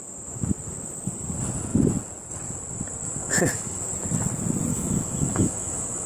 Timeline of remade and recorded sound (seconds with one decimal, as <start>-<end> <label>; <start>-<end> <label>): 0.0-3.2 recorded; 3.2-3.8 remade; 3.8-4.7 recorded; 4.7-6.1 remade